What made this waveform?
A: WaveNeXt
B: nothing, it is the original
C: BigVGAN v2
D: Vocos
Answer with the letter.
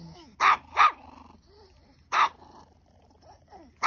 B